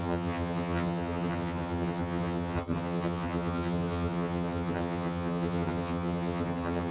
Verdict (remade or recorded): remade